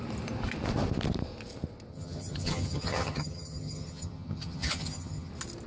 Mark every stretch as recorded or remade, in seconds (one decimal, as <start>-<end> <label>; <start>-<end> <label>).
0.0-1.9 recorded; 1.9-5.3 remade; 5.3-5.7 recorded